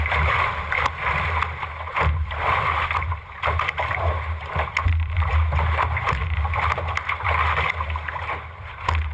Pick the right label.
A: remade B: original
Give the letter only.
B